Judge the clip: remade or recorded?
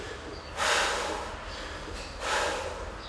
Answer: recorded